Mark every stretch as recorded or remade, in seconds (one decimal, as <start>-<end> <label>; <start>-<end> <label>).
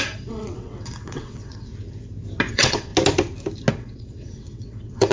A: 0.0-1.7 remade; 1.7-2.5 recorded; 2.5-2.9 remade; 2.9-3.7 recorded; 3.7-5.1 remade